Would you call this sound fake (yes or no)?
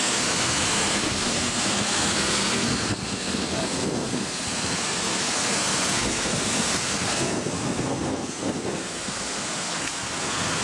yes